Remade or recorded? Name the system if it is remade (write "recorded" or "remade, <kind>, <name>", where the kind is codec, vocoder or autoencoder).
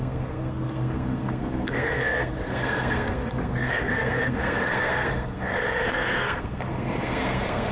remade, codec, SNAC